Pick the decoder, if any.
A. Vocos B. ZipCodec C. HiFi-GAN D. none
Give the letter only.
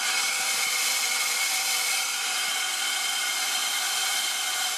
D